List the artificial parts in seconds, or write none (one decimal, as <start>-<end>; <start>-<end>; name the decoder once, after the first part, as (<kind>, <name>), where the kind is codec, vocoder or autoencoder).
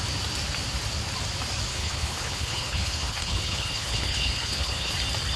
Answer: 1.7-4.9 (codec, HILCodec)